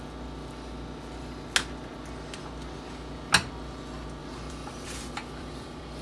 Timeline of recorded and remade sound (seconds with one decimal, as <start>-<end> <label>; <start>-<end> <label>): 0.0-4.2 recorded; 4.2-6.0 remade